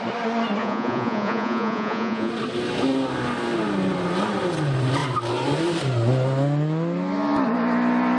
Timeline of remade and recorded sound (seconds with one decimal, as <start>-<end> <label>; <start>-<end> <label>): 0.0-0.6 recorded; 0.6-2.3 remade; 2.3-8.2 recorded